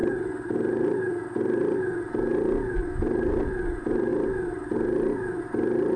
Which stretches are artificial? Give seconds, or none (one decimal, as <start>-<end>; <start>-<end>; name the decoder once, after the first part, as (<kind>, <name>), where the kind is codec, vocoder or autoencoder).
none

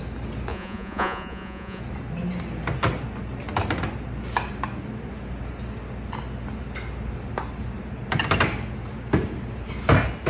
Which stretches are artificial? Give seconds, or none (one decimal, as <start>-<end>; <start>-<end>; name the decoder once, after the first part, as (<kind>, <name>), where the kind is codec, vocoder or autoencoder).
0.5-1.8 (vocoder, Vocos)